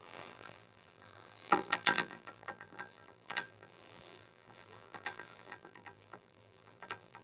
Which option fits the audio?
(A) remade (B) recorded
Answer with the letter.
A